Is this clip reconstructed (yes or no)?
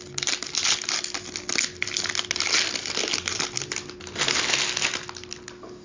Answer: no